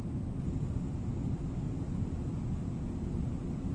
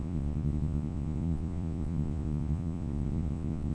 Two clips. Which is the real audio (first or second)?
first